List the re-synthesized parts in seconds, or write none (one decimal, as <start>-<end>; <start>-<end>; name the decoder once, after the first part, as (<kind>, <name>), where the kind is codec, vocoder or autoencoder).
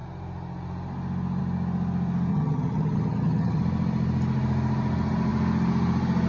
2.3-3.6 (vocoder, HiFi-GAN)